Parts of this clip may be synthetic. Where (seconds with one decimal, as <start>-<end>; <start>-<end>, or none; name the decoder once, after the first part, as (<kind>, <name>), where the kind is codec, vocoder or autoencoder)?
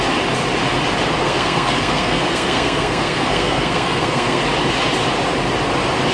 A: 1.2-4.4 (codec, SNAC)